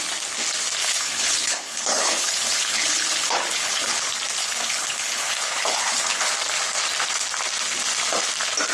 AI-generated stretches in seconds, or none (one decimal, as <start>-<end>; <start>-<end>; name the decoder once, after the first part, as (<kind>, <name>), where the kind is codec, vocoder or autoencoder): 0.8-4.0 (codec, HILCodec); 4.4-6.3